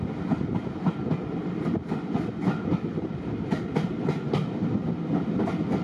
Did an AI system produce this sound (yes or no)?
no